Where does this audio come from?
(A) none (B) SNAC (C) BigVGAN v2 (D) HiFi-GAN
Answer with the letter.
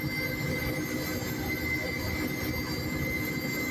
A